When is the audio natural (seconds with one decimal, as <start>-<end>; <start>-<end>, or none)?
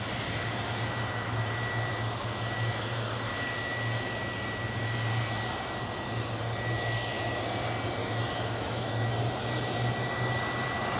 0.0-8.0; 9.1-11.0